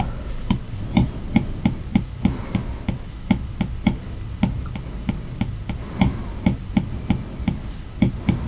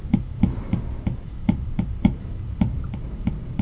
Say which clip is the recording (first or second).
first